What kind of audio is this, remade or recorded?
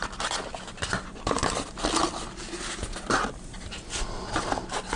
recorded